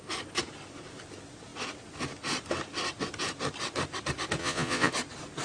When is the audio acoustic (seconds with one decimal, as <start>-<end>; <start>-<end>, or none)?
0.0-4.4; 4.9-5.4